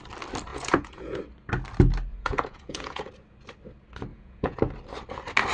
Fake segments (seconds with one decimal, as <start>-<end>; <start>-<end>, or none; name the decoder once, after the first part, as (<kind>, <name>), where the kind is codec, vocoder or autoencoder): 0.5-1.2 (vocoder, Vocos); 2.1-3.1; 4.1-4.6